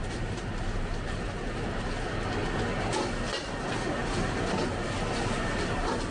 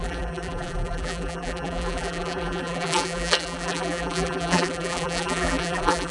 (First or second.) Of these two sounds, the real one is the first